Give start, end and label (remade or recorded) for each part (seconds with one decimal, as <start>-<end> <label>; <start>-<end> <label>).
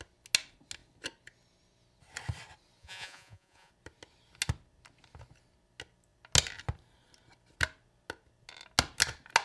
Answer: 0.0-2.8 recorded; 2.8-3.7 remade; 3.7-9.4 recorded